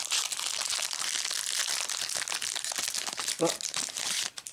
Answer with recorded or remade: recorded